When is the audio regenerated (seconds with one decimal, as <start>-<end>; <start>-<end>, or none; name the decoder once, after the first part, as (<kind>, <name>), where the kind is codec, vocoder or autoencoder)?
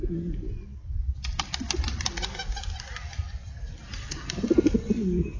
none